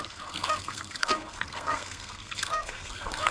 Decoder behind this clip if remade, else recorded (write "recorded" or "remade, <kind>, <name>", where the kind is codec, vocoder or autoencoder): remade, codec, SNAC